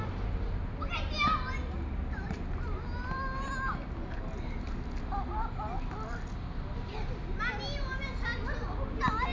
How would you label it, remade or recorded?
recorded